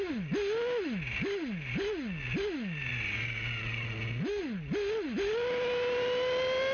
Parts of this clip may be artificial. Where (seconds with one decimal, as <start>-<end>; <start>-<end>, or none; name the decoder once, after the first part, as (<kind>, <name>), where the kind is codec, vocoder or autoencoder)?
none